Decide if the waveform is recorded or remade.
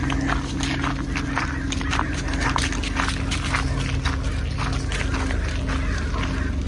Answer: recorded